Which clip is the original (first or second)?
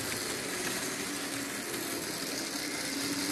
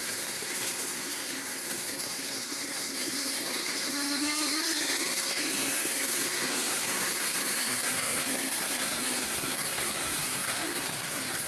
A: first